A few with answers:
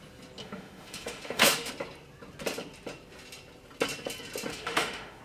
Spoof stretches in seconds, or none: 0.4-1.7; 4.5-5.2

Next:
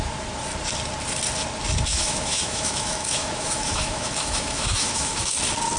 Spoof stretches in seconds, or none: 1.9-5.3

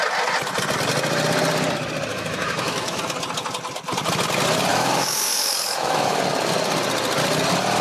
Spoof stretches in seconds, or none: 2.1-3.0; 4.7-6.2